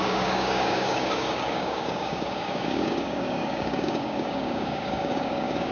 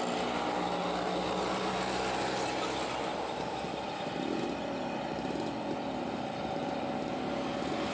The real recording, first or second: second